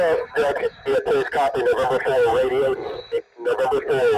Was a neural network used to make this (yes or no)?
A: no